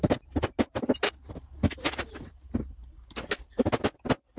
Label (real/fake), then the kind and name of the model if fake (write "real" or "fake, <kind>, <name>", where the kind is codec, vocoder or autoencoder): real